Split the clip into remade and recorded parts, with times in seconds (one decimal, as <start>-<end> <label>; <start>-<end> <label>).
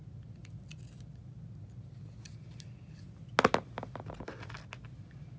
0.0-5.4 recorded